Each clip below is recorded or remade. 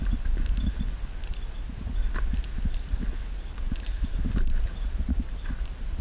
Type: recorded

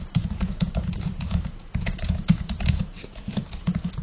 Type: remade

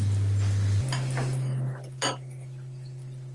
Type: recorded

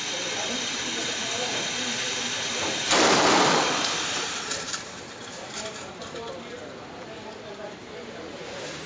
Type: remade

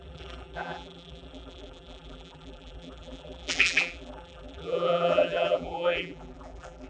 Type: remade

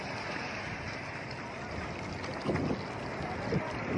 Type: recorded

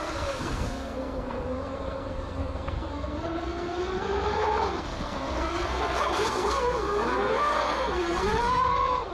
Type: remade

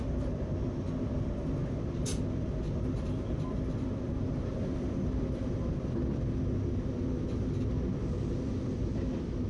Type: recorded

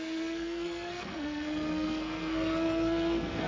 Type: remade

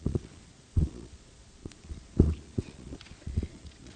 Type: remade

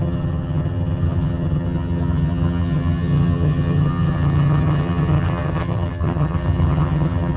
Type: remade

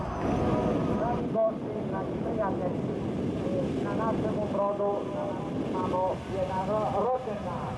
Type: recorded